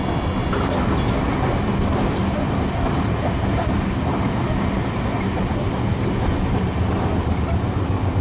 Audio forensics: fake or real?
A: real